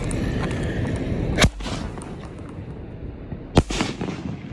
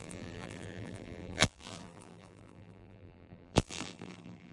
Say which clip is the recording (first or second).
first